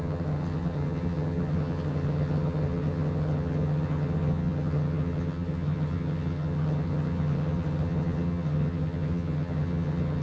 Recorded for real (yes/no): no